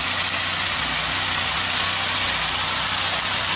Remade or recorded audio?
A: recorded